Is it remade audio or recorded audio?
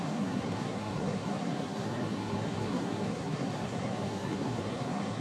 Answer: remade